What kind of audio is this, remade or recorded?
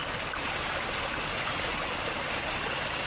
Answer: recorded